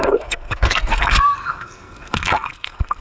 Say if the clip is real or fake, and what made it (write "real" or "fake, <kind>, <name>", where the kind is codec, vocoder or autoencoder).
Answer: fake, codec, SNAC